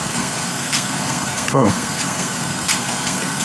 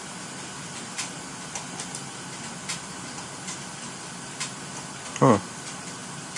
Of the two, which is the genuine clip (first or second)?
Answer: second